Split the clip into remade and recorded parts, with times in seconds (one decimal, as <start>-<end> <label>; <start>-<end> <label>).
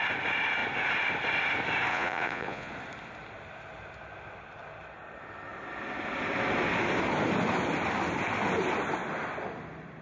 0.0-1.9 recorded; 1.9-2.7 remade; 2.7-10.0 recorded